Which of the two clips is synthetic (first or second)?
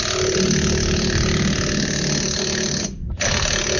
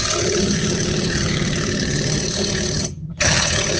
second